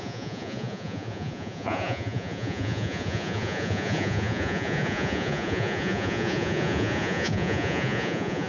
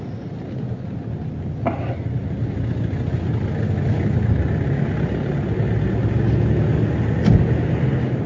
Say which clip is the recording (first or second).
second